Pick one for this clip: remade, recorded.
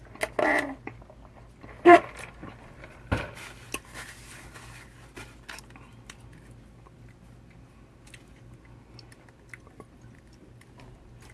recorded